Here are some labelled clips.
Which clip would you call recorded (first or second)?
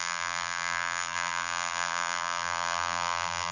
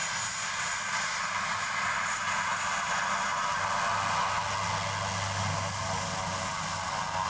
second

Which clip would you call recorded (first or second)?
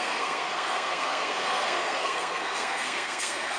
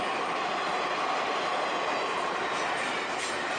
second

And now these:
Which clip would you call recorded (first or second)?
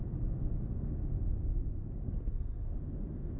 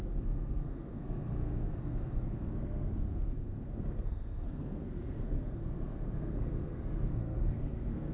first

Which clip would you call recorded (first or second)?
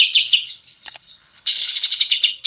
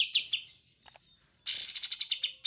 second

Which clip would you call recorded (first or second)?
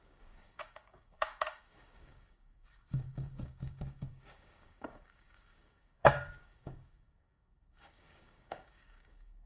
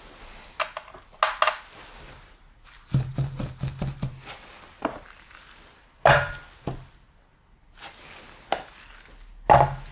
second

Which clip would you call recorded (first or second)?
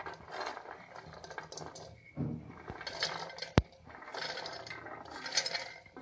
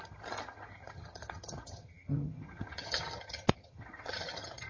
first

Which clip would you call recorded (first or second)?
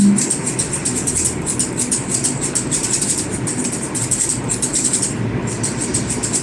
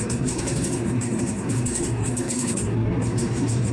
first